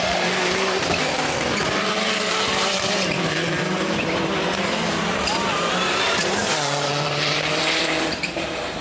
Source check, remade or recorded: remade